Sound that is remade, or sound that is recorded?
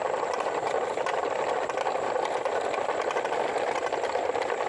recorded